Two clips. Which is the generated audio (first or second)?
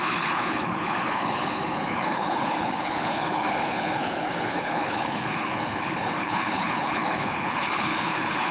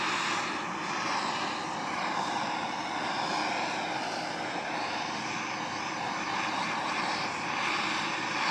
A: first